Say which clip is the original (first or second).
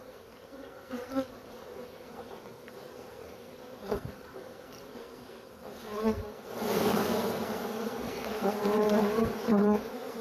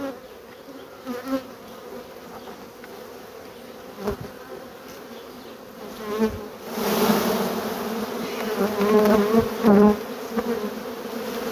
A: second